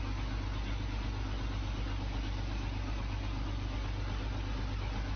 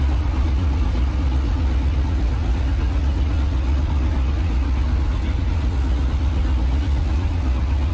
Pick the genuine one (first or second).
first